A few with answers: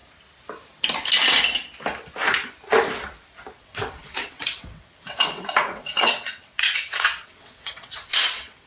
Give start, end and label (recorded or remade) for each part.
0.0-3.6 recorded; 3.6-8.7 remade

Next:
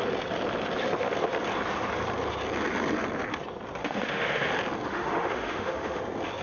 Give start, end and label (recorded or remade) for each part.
0.0-3.8 recorded; 3.8-4.5 remade; 4.5-4.9 recorded; 4.9-6.0 remade; 6.0-6.4 recorded